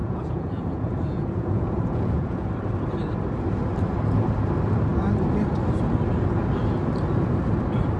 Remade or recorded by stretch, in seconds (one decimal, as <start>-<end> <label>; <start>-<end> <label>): 0.0-2.5 remade; 2.5-8.0 recorded